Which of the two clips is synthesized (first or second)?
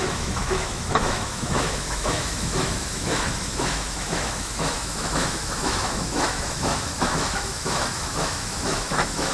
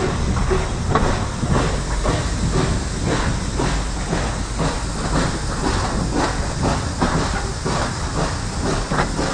first